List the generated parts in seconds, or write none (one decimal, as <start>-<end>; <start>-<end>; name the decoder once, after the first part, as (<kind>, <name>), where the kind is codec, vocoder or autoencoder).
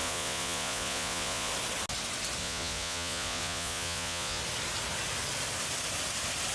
0.0-1.5 (vocoder, Vocos); 2.4-4.4